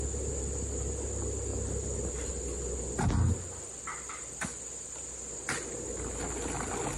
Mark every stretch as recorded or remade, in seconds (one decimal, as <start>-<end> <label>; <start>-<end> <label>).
0.0-7.0 recorded